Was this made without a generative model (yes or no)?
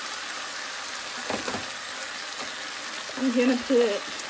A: yes